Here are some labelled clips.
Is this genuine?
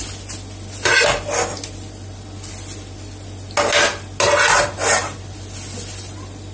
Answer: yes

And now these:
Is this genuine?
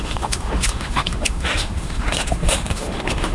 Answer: no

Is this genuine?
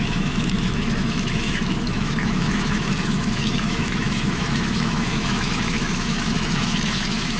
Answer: no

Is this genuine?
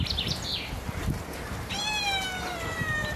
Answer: yes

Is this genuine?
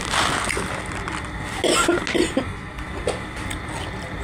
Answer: yes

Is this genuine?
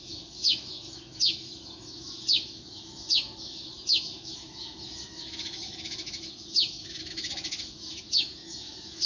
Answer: no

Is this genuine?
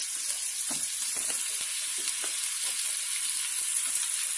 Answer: yes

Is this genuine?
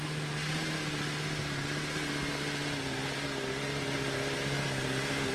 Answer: yes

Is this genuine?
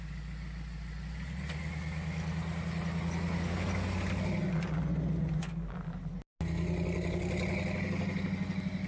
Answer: yes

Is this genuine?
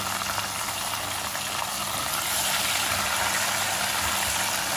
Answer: yes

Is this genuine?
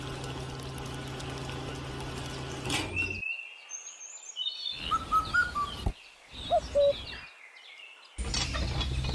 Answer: yes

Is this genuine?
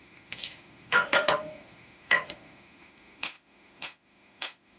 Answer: no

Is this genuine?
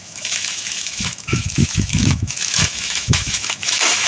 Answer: no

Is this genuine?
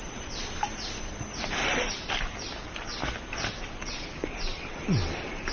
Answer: yes